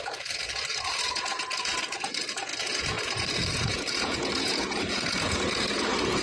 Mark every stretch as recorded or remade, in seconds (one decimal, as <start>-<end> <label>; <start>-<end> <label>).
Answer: 0.0-6.2 remade